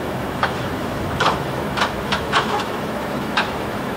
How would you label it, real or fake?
fake